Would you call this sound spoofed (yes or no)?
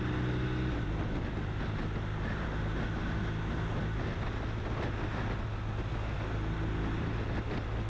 no